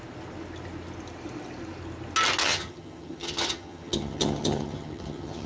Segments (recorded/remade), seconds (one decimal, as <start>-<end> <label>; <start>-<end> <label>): 0.0-2.4 recorded; 2.4-5.5 remade